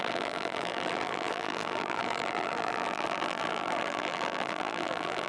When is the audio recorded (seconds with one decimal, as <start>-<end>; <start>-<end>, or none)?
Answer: none